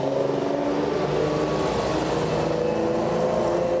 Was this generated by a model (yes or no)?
no